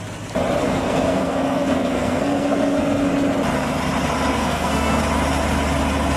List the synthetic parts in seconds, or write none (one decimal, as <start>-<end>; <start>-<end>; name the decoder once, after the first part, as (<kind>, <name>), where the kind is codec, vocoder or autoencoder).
0.6-3.1 (codec, SNAC); 4.3-5.0

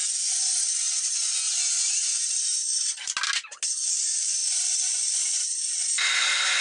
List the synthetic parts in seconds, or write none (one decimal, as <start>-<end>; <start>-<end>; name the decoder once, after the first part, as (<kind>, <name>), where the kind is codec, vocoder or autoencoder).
none

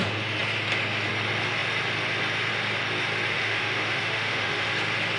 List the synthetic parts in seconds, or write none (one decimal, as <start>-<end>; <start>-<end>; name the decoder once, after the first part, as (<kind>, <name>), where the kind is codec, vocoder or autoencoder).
3.3-4.7 (autoencoder, DAC-VAE)

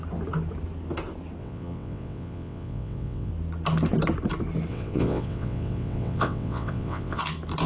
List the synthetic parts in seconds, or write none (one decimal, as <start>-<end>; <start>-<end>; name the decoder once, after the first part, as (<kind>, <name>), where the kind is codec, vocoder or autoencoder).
1.4-3.3 (vocoder, WaveNeXt); 4.7-7.2

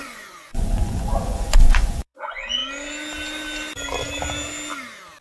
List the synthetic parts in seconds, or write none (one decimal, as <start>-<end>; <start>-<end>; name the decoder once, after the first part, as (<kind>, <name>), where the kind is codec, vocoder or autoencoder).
0.0-2.6 (vocoder, Vocos)